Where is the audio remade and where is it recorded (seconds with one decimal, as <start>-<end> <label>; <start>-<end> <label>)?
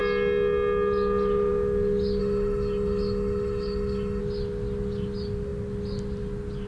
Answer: 0.0-2.2 recorded; 2.2-4.2 remade; 4.2-6.7 recorded